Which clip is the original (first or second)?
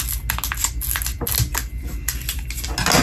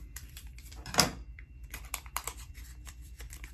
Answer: first